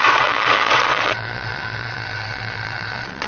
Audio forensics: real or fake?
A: fake